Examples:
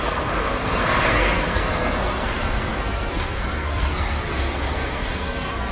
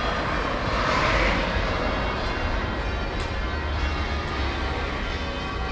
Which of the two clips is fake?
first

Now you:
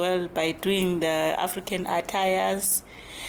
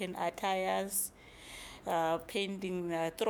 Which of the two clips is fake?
second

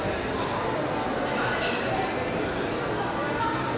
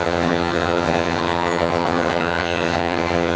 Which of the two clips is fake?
second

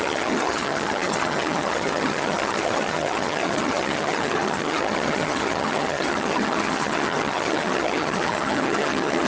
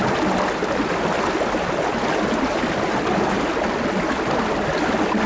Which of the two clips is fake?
first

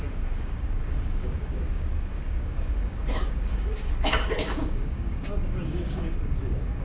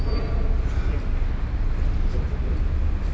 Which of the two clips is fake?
first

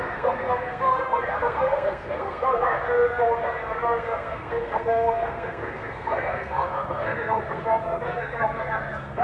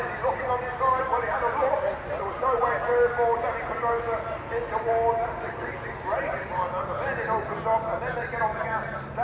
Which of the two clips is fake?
first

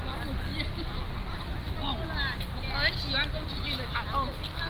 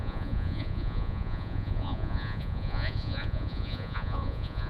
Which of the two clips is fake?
second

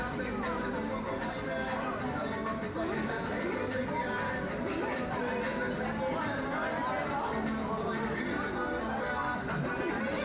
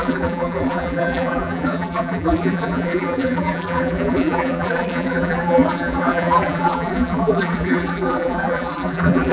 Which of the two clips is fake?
second